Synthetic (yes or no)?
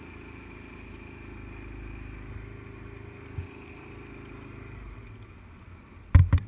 no